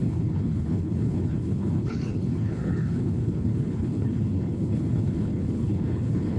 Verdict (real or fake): fake